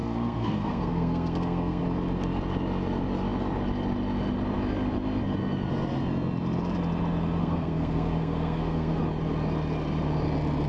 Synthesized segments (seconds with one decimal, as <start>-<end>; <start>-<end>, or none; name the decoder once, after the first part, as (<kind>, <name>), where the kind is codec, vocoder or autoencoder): 0.0-1.8 (codec, SNAC); 7.4-9.0